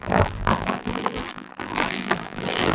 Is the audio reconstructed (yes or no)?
yes